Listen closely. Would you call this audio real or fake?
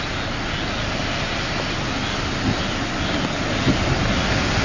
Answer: real